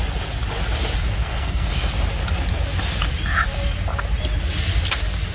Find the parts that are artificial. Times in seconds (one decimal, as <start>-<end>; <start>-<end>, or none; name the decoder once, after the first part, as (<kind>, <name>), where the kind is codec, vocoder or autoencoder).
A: 1.2-1.9 (codec, SNAC)